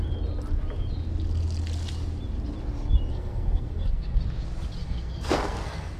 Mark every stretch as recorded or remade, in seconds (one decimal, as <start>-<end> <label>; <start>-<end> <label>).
0.0-3.1 recorded; 3.1-4.2 remade; 4.2-4.8 recorded; 4.8-6.0 remade

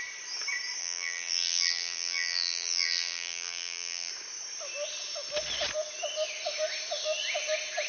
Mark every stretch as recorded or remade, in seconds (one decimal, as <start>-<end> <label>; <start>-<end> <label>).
0.0-0.8 recorded; 0.8-4.1 remade; 4.1-7.9 recorded

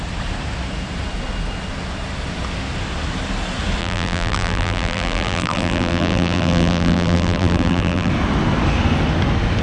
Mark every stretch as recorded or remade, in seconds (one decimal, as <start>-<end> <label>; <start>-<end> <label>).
0.0-3.8 recorded; 3.8-8.1 remade; 8.1-9.6 recorded